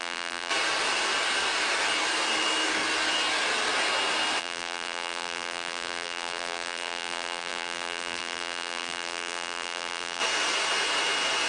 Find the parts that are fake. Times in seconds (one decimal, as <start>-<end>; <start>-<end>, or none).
0.0-0.5; 4.4-10.2